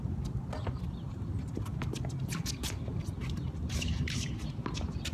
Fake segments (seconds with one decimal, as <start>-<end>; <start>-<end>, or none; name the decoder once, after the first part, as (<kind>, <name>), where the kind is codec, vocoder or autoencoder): none